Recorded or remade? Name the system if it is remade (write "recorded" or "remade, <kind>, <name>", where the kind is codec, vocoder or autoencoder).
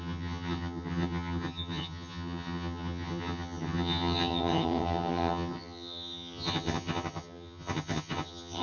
remade, vocoder, HiFi-GAN